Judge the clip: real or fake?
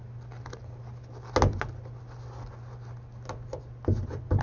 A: real